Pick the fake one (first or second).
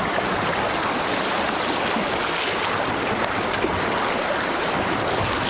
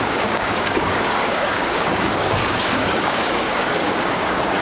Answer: second